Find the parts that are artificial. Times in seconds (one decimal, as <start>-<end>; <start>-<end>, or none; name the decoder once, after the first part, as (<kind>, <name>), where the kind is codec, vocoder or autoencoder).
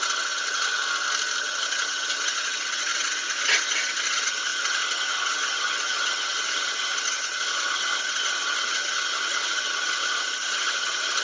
0.0-0.8 (vocoder, HiFi-GAN); 1.4-11.2